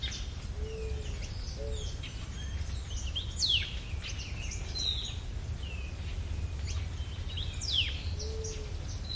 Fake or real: real